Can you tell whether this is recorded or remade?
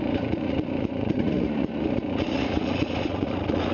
remade